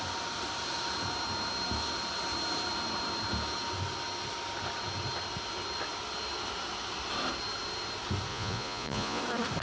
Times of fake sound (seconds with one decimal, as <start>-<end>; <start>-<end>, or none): 8.3-9.2